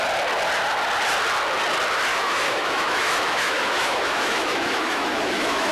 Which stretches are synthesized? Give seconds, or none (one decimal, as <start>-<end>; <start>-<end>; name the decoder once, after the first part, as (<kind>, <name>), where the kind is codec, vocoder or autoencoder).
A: 2.1-5.7 (autoencoder, DAC-VAE)